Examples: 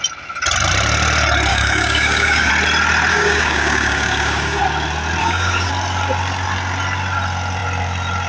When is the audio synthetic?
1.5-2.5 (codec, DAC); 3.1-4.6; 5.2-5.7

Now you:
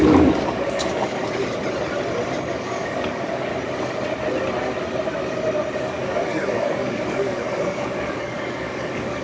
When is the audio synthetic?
0.0-1.2 (codec, DAC); 2.5-3.5; 5.8-9.2

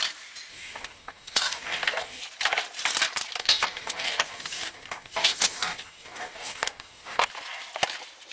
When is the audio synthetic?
0.5-2.2 (codec, DAC); 3.4-7.3

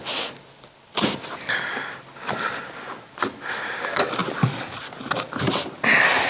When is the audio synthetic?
none